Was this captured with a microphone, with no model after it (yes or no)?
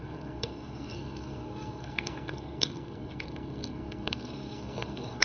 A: no